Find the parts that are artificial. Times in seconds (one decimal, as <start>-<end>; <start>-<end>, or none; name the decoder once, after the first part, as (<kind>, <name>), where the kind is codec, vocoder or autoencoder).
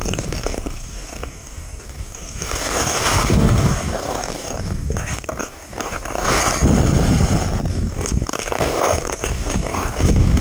0.0-6.4 (codec, DAC); 7.7-10.4